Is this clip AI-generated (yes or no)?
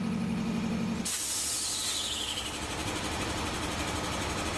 no